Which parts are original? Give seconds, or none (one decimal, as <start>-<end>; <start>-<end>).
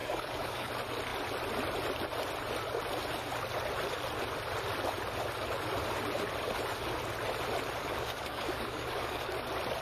0.7-7.8; 9.3-9.8